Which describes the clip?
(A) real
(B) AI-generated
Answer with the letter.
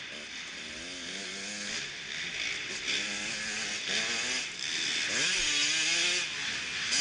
A